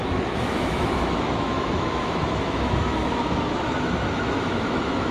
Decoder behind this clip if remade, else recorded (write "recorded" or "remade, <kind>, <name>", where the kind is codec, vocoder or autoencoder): remade, autoencoder, DAC-VAE